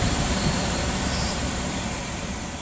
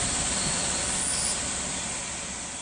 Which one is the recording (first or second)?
second